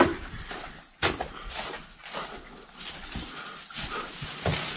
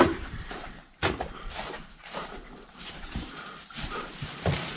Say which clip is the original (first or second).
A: first